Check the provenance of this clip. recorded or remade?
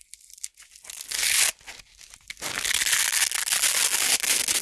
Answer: recorded